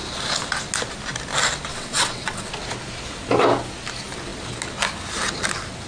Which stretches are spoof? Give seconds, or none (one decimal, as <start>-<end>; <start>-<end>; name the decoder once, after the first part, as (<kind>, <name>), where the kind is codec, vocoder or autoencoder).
1.7-2.5 (vocoder, WaveNeXt)